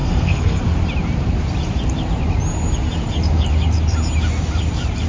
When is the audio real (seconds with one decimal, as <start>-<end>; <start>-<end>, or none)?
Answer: 0.6-5.1